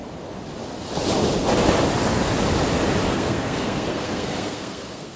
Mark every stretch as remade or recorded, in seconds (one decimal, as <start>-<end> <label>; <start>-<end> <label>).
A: 0.0-3.1 recorded; 3.1-5.2 remade